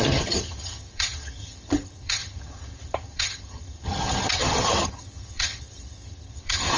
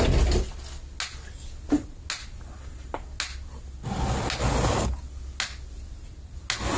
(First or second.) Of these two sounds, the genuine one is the second